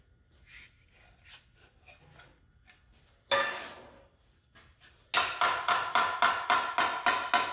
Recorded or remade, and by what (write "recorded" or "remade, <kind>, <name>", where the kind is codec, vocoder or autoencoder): recorded